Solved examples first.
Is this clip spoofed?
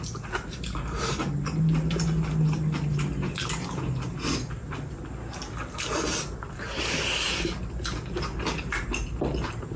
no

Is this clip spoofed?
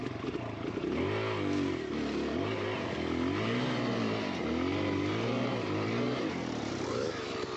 no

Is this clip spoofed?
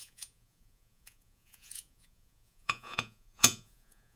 yes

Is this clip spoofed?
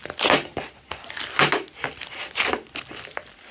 no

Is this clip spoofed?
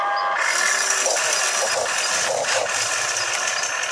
no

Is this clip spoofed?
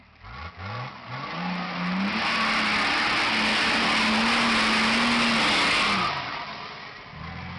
no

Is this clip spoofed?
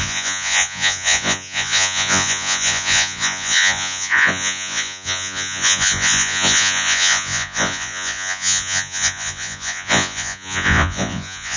yes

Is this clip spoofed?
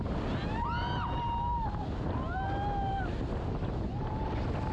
no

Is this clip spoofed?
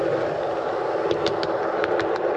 no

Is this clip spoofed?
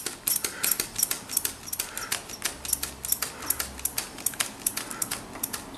no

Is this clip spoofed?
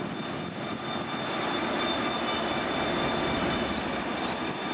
no